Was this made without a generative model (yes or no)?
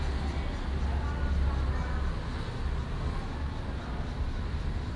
yes